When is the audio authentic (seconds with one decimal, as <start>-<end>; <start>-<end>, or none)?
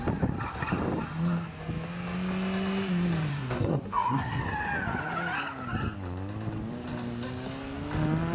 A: 0.0-3.3; 4.4-8.3